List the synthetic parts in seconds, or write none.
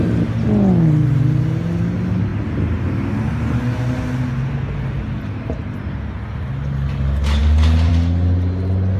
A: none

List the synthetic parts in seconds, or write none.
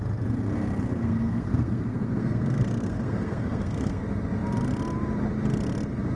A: 1.0-4.0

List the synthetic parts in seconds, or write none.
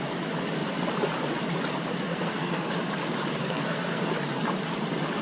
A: 2.1-2.7; 3.4-4.1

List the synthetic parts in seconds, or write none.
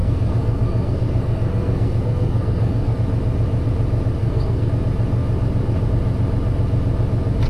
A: 0.0-3.0; 4.2-4.7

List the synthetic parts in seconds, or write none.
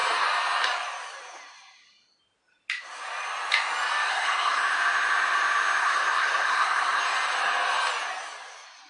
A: 4.1-4.6; 5.8-7.0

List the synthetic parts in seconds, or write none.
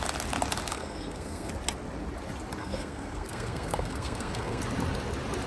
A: 0.7-1.5; 2.6-4.6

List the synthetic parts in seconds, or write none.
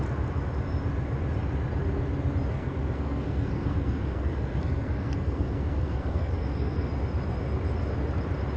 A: 2.5-6.9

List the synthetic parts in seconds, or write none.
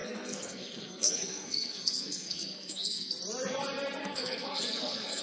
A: 0.0-3.1; 4.0-5.2